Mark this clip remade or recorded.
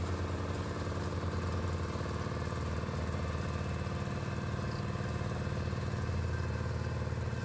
recorded